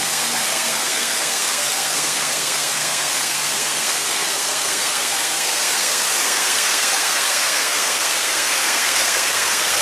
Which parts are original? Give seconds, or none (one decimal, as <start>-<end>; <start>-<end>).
none